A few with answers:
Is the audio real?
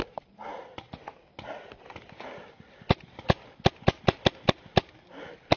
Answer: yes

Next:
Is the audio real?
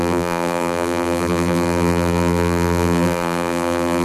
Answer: no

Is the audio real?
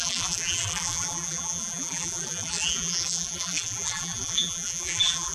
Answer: no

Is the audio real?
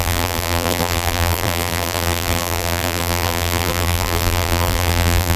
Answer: no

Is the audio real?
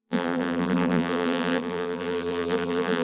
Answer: no